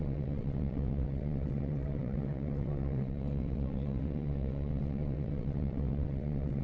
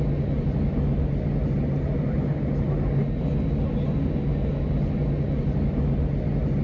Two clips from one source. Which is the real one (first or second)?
second